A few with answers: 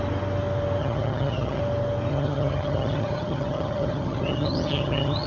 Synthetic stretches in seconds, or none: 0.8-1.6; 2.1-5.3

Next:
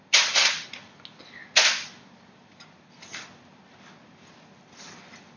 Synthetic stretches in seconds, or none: none

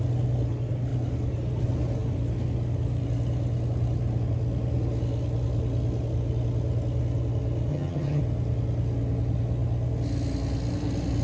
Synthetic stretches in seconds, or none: 7.7-8.2

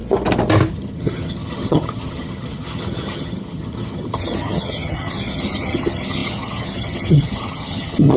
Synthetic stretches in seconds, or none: 0.7-8.2

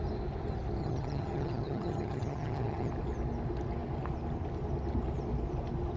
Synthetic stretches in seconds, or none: 0.8-2.9

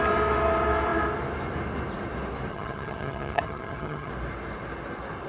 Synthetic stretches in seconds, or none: 2.5-4.1